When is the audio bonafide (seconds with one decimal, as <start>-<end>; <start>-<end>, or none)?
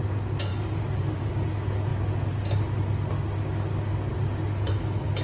0.0-0.5; 1.3-5.2